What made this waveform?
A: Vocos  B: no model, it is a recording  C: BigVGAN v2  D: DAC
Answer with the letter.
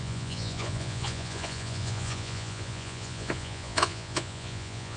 A